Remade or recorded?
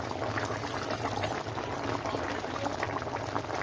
recorded